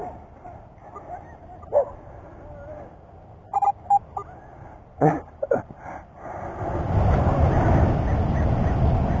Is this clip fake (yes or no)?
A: no